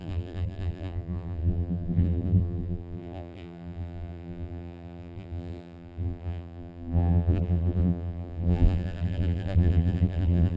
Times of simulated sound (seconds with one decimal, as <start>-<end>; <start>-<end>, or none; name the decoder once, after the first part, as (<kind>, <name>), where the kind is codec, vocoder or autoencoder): 0.0-10.6 (vocoder, BigVGAN v2)